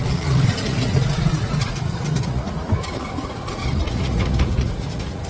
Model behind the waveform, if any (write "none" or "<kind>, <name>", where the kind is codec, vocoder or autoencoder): vocoder, Vocos